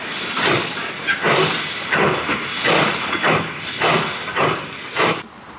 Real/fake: real